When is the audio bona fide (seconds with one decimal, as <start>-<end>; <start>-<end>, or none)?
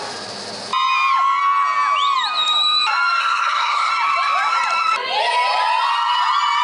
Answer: 0.0-3.2; 3.9-6.6